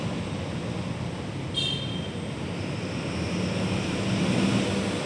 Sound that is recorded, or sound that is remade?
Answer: recorded